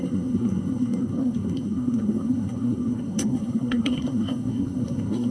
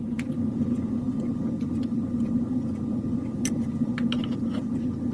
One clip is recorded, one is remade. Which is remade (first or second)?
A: first